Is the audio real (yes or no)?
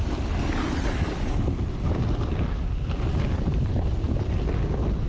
yes